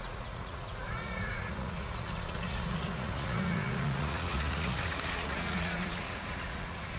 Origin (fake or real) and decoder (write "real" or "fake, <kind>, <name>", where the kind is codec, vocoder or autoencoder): fake, vocoder, Vocos